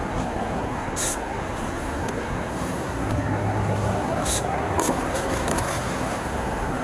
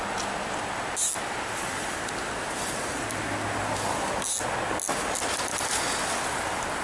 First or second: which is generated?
first